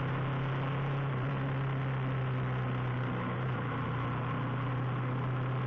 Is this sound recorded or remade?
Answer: recorded